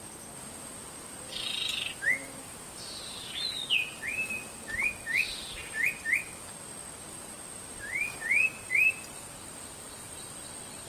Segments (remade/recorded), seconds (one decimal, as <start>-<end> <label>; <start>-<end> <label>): 0.0-10.9 recorded